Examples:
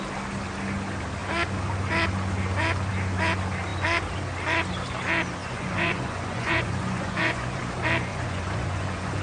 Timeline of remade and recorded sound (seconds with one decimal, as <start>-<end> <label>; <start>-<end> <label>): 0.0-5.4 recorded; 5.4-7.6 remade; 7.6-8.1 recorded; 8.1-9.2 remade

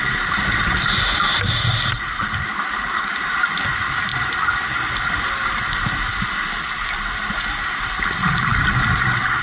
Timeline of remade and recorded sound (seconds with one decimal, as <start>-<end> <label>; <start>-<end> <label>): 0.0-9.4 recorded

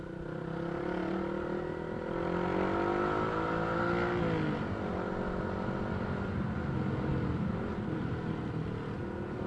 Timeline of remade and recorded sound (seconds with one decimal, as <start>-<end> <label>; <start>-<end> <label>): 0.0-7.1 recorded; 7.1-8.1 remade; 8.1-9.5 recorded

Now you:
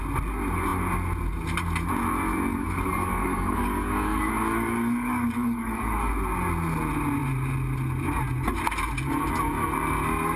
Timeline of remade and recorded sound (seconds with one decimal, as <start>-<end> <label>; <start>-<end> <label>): 0.0-2.5 recorded; 2.5-6.1 remade; 6.1-10.4 recorded

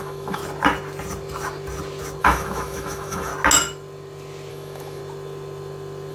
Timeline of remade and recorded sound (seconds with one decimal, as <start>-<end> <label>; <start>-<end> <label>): 0.0-0.4 remade; 0.4-2.2 recorded; 2.2-3.3 remade; 3.3-4.5 recorded; 4.5-5.0 remade; 5.0-6.1 recorded

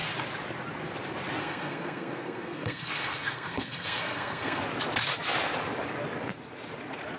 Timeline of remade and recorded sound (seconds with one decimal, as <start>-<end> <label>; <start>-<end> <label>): 0.0-1.4 recorded; 1.4-4.6 remade; 4.6-7.2 recorded

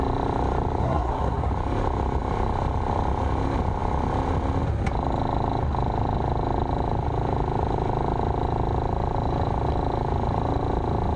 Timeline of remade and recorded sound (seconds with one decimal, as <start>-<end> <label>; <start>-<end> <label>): 0.0-0.8 recorded; 0.8-1.5 remade; 1.5-11.2 recorded

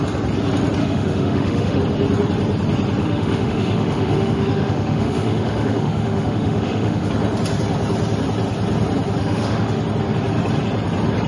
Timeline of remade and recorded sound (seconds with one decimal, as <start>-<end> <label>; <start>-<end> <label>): 0.0-0.8 recorded; 0.8-1.8 remade; 1.8-3.0 recorded; 3.0-7.1 remade; 7.1-9.2 recorded; 9.2-9.8 remade; 9.8-11.3 recorded